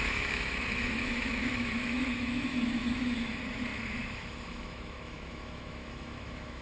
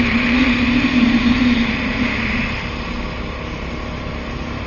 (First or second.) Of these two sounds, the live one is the second